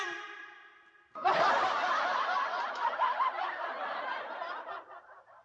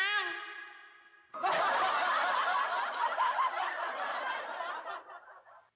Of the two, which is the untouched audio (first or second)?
second